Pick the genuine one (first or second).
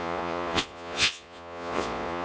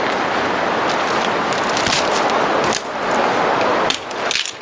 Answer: second